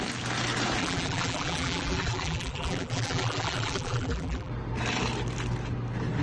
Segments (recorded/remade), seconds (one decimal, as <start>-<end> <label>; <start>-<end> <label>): 0.0-0.8 recorded; 0.8-4.5 remade; 4.5-6.2 recorded